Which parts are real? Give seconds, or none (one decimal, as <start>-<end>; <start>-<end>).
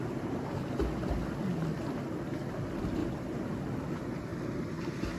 0.0-4.3; 4.8-5.2